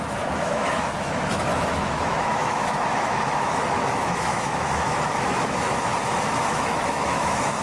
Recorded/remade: remade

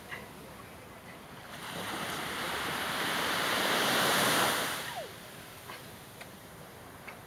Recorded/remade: remade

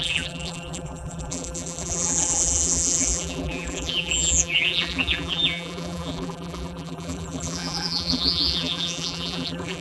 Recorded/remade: remade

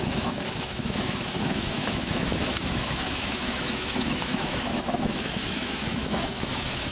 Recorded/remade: remade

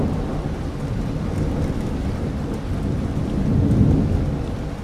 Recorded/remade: recorded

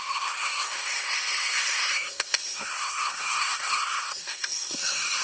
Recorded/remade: remade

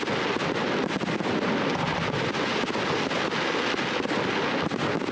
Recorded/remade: recorded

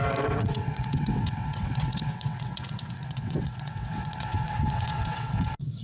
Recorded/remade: remade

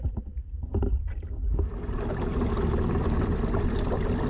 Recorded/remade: recorded